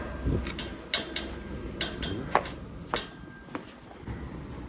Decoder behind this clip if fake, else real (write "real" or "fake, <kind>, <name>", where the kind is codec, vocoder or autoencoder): real